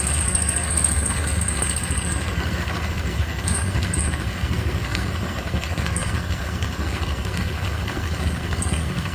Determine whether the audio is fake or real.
fake